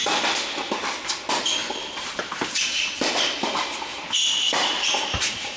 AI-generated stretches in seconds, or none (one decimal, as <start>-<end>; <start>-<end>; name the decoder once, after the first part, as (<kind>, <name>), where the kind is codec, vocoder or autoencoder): 1.6-3.1 (vocoder, BigVGAN v2); 3.9-5.6